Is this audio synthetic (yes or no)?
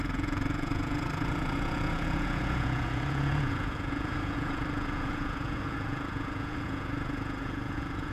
yes